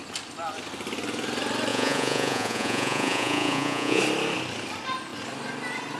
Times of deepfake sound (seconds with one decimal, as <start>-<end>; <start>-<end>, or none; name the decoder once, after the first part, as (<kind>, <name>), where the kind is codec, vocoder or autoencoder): 1.7-4.0 (vocoder, Vocos)